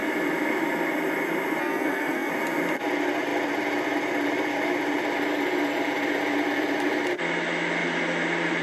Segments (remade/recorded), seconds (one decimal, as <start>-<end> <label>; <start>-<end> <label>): 0.0-1.6 recorded; 1.6-2.3 remade; 2.3-8.6 recorded